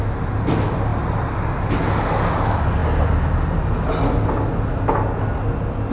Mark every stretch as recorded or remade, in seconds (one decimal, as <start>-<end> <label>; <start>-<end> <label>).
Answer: 0.0-5.9 recorded